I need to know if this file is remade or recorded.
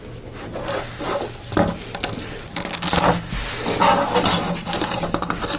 recorded